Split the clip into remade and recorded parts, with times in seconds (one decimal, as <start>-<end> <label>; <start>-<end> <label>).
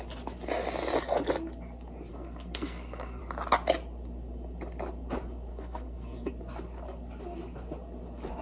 0.0-2.1 recorded; 2.1-3.2 remade; 3.2-5.5 recorded; 5.5-6.3 remade; 6.3-8.4 recorded